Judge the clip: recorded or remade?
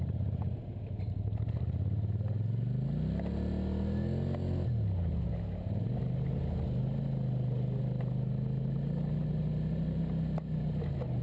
recorded